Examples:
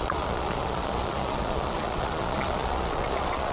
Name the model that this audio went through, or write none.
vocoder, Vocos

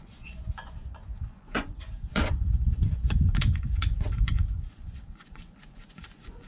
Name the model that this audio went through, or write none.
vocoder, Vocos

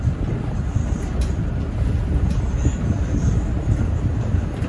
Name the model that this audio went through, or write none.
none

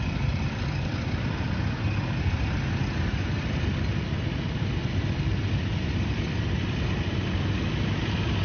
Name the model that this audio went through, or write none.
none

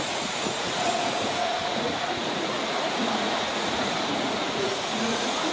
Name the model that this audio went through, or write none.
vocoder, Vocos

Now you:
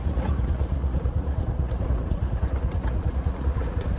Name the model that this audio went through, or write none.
vocoder, Vocos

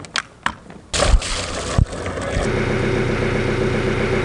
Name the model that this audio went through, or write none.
none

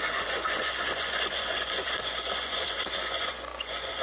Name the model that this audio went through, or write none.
vocoder, Vocos